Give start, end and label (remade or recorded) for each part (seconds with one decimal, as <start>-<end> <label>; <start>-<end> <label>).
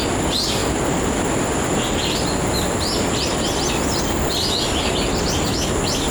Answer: 0.0-6.1 recorded